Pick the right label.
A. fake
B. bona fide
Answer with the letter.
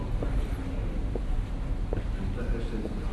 B